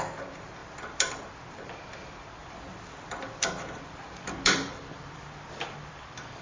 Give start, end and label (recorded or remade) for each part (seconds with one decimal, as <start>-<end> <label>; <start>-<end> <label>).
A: 0.0-0.6 recorded; 0.6-1.3 remade; 1.3-2.4 recorded; 2.4-6.4 remade